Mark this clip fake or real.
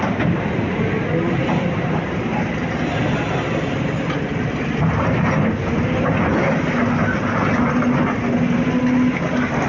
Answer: real